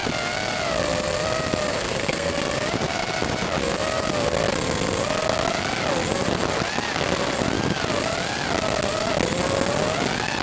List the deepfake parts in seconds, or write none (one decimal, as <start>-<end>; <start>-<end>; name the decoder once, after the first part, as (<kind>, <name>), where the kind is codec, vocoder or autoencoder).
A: 1.7-2.3 (codec, SNAC)